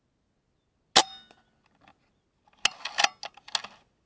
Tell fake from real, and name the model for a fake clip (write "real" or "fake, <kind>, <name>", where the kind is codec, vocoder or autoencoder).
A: real